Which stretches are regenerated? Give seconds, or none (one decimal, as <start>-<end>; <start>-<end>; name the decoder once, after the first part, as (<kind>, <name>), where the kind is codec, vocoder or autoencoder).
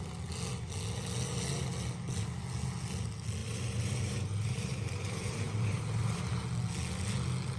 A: 3.4-6.2 (vocoder, BigVGAN v2)